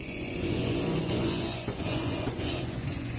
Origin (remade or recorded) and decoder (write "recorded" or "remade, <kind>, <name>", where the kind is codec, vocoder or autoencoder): remade, vocoder, Vocos